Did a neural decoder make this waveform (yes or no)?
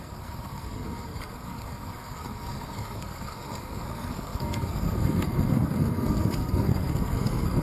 yes